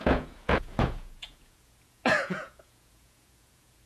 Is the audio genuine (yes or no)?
no